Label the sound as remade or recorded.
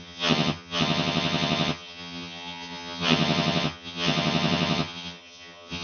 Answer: remade